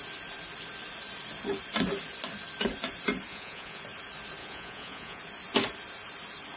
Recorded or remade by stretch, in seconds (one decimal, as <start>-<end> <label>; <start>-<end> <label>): 0.0-3.3 recorded; 3.3-3.8 remade; 3.8-4.4 recorded; 4.4-5.2 remade; 5.2-6.6 recorded